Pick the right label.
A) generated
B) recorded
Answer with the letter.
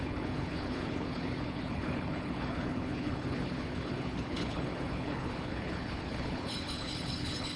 A